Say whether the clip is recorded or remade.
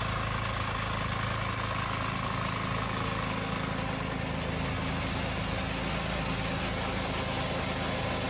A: recorded